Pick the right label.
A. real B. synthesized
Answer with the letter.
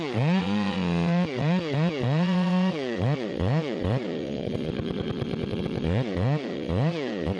B